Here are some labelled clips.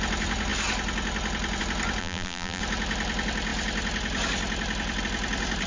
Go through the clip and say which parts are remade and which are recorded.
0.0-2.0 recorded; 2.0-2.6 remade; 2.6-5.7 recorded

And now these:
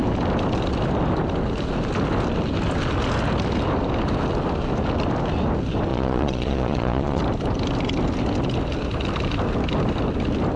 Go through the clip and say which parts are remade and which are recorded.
0.0-5.9 recorded; 5.9-7.2 remade; 7.2-10.6 recorded

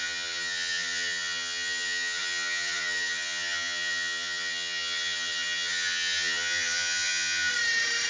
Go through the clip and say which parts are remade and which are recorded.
0.0-7.5 remade; 7.5-8.1 recorded